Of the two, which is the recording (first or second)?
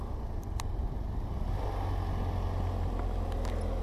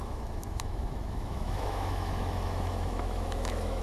first